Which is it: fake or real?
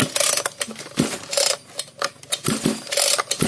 real